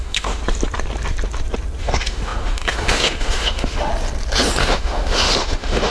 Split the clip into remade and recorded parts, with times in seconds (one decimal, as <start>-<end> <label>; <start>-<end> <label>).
0.0-0.4 remade; 0.4-1.8 recorded; 1.8-3.9 remade; 3.9-4.6 recorded; 4.6-5.9 remade